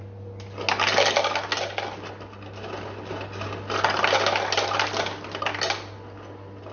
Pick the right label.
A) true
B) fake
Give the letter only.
A